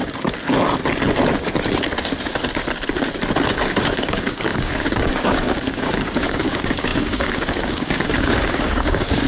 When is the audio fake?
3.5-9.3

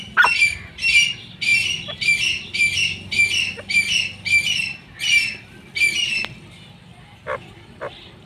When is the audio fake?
6.9-7.9

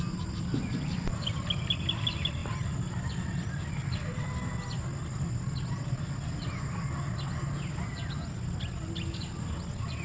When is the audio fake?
none

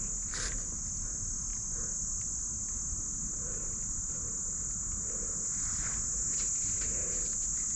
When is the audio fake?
none

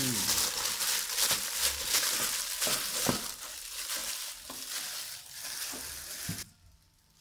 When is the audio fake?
none

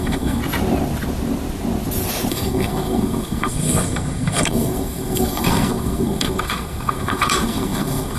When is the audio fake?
0.0-0.4; 2.3-8.2

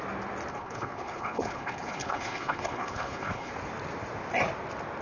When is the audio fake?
0.5-3.5

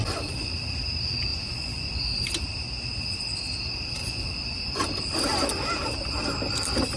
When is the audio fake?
1.3-2.0; 4.0-4.8